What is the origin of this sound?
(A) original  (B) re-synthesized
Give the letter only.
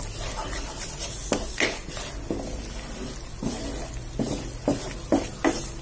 A